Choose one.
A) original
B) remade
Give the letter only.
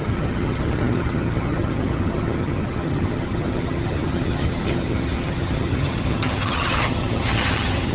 B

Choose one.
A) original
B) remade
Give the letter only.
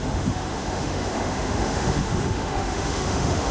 B